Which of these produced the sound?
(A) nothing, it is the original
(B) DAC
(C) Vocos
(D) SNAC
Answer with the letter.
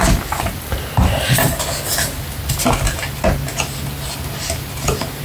A